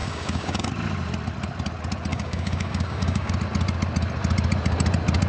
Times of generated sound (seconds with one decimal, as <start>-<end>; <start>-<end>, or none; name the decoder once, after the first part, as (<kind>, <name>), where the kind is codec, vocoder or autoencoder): 0.0-0.7 (codec, DAC); 2.1-3.3